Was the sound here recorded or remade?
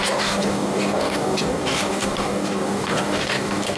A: remade